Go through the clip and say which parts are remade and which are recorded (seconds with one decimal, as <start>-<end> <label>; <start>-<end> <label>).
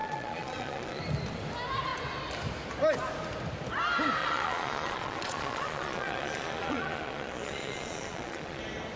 0.0-1.0 remade; 1.0-4.2 recorded; 4.2-8.6 remade; 8.6-9.0 recorded